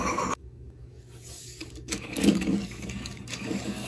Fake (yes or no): yes